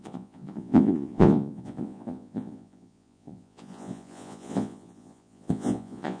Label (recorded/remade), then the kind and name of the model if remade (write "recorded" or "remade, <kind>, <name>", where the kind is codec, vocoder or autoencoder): remade, vocoder, Vocos